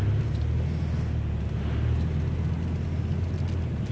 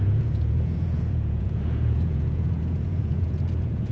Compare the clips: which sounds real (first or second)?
first